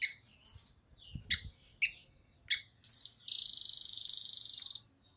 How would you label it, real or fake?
real